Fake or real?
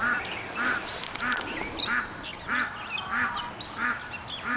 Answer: real